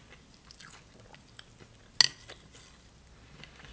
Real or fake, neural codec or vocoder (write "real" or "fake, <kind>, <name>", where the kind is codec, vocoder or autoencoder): real